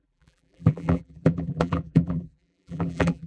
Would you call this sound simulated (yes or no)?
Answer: yes